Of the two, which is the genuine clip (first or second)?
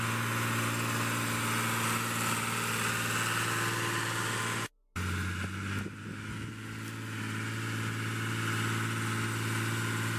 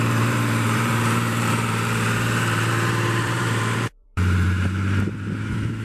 first